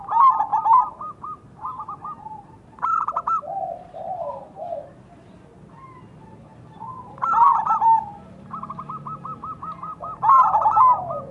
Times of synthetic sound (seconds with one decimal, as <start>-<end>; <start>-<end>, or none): 0.5-5.3; 6.5-10.7